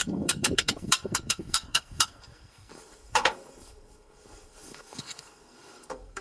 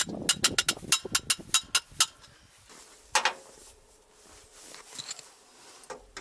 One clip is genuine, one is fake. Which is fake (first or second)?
first